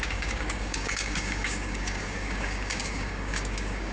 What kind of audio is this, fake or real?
fake